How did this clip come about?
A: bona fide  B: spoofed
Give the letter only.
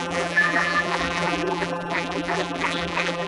B